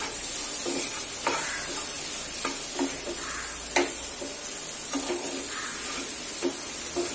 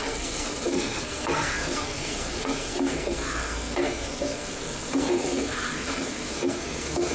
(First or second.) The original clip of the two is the first